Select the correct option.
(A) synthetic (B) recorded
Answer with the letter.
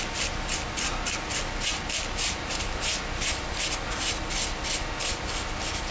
B